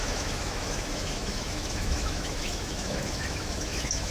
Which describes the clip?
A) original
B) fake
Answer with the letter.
B